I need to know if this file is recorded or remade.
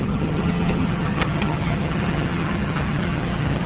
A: remade